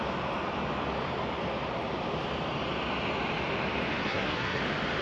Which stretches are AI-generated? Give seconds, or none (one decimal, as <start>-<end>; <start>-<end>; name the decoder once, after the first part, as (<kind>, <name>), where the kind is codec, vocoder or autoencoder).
4.0-4.6 (codec, SNAC)